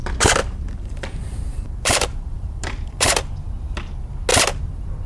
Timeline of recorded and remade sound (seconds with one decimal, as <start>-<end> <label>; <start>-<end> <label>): 0.0-0.4 recorded; 0.4-3.5 remade; 3.5-5.1 recorded